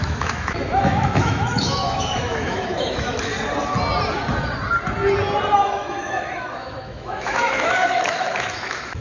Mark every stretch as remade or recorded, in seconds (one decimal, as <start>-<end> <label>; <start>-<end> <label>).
0.0-3.3 remade; 3.3-5.5 recorded; 5.5-9.0 remade